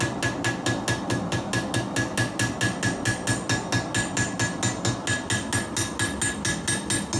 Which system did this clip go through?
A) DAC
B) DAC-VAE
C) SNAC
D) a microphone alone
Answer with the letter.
D